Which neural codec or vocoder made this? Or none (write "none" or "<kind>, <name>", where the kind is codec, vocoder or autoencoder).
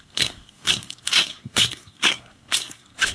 codec, SNAC